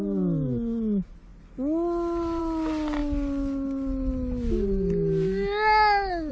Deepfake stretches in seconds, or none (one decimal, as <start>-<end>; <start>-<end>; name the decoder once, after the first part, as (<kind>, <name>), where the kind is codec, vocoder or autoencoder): none